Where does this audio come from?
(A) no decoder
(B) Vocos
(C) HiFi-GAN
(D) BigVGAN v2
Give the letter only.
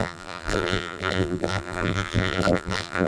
D